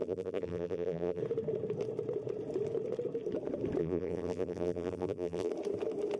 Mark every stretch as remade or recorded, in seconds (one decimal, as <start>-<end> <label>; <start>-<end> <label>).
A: 0.0-1.2 remade; 1.2-3.8 recorded; 3.8-5.5 remade; 5.5-6.2 recorded

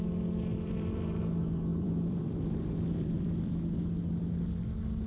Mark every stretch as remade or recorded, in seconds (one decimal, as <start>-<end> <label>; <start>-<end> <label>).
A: 0.0-0.5 recorded; 0.5-1.2 remade; 1.2-1.7 recorded; 1.7-3.5 remade; 3.5-5.1 recorded